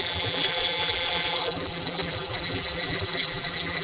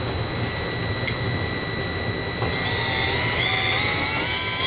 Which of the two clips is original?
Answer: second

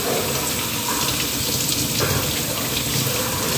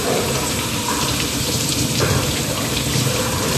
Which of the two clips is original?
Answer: first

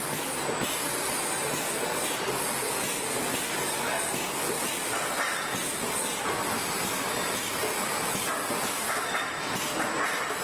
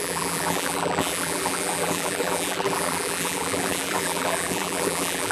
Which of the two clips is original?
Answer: first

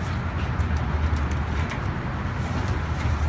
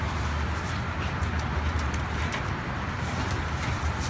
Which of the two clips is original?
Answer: first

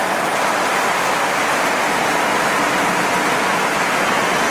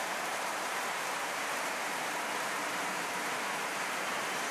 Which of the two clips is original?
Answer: first